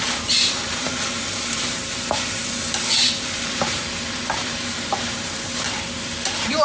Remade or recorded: remade